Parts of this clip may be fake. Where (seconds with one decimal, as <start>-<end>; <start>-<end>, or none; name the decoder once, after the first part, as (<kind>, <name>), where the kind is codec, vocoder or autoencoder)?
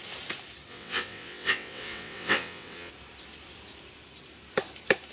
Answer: 0.7-2.9 (vocoder, WaveNeXt)